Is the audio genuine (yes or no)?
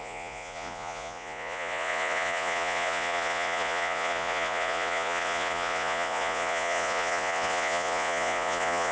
no